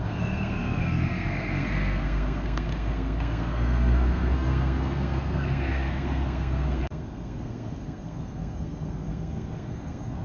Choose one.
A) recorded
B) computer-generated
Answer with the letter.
B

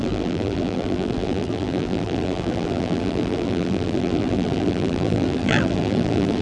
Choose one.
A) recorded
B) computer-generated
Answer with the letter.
B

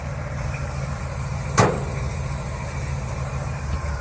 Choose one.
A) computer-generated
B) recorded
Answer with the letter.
A